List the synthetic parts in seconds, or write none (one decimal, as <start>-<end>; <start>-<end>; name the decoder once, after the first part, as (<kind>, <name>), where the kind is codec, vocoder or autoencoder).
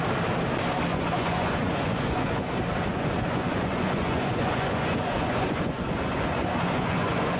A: 0.9-2.5 (vocoder, Vocos); 2.9-7.4